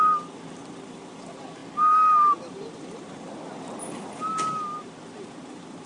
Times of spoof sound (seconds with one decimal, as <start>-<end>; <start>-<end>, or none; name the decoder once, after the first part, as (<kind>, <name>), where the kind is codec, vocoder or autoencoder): none